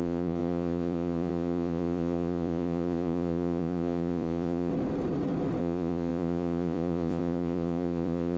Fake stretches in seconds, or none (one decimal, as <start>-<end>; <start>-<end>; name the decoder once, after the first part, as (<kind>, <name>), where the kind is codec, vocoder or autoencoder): 0.0-4.7 (vocoder, Vocos); 5.6-8.4